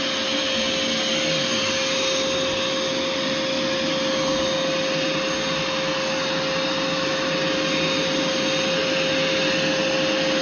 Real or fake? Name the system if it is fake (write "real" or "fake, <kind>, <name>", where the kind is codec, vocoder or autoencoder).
real